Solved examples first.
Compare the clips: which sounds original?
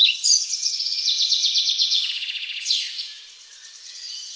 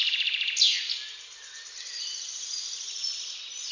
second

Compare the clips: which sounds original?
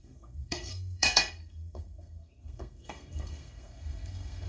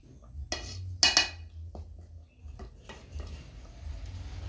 second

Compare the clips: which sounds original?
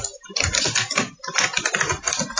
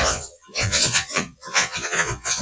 first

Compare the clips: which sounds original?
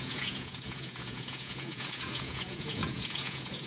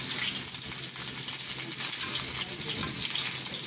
second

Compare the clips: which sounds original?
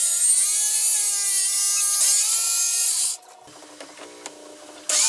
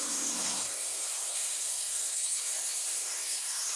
first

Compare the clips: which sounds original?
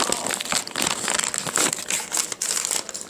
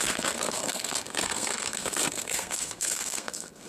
first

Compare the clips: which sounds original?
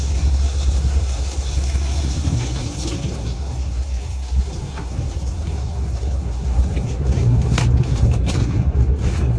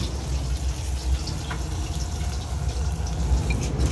second